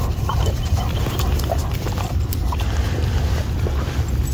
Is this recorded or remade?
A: recorded